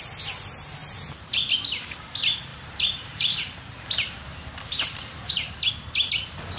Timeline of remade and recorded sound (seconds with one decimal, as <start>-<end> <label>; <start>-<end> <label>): 0.0-0.8 recorded; 0.8-1.5 remade; 1.5-2.5 recorded; 2.5-5.7 remade; 5.7-6.6 recorded